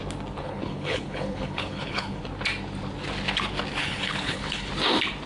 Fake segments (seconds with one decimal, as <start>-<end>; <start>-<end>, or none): 0.4-2.2; 3.8-4.7